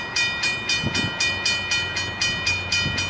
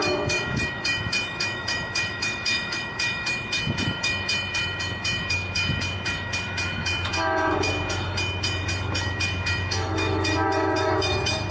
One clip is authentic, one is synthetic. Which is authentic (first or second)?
first